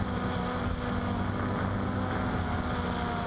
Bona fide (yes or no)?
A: yes